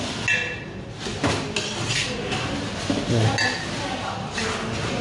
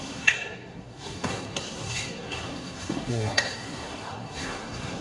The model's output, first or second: second